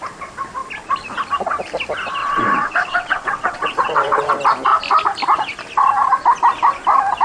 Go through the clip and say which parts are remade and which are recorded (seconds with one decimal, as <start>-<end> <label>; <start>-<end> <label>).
0.0-2.2 recorded; 2.2-4.3 remade; 4.3-7.2 recorded